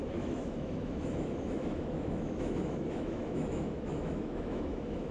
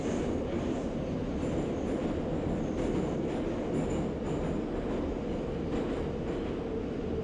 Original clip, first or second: second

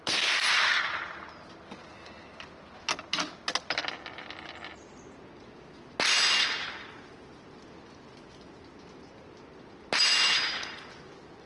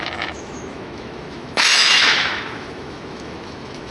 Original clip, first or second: first